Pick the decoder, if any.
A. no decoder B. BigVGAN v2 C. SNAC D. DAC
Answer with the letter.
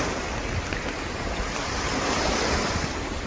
A